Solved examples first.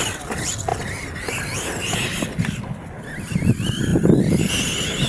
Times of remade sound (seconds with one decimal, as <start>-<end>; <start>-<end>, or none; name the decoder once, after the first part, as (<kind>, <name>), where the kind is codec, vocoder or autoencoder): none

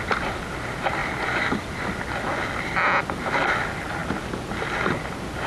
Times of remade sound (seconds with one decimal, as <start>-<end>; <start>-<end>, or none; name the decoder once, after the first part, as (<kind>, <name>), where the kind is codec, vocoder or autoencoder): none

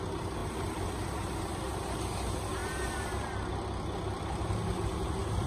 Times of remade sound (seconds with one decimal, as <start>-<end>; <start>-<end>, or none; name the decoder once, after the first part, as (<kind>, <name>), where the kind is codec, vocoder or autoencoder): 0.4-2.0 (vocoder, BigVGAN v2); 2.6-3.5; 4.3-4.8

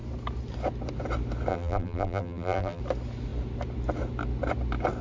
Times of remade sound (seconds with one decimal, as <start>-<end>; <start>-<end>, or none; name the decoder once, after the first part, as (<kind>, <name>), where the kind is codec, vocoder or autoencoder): 1.5-2.8 (vocoder, BigVGAN v2)

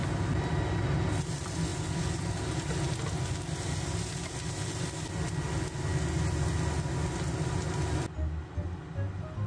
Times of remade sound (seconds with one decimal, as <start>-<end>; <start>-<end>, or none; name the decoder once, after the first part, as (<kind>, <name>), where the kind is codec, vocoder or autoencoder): none